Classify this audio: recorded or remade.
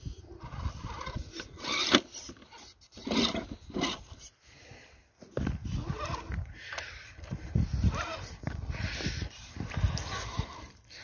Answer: recorded